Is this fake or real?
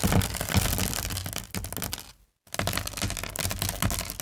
real